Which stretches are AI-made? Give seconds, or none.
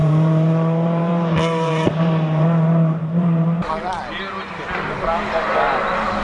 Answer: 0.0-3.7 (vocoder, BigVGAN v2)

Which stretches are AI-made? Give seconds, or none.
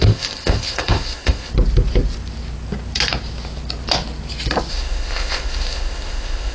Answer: 0.0-1.5 (codec, ZipCodec); 4.7-6.5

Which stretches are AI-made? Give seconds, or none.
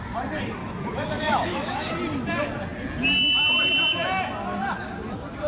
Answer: 0.6-1.9 (autoencoder, DAC-VAE)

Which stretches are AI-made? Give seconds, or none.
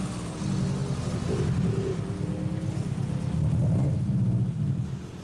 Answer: none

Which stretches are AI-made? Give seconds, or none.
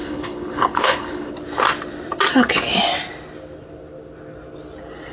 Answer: 0.0-1.3 (codec, HILCodec)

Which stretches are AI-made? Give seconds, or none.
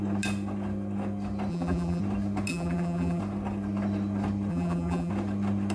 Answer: 1.5-2.0 (vocoder, BigVGAN v2); 2.5-3.2; 4.5-5.1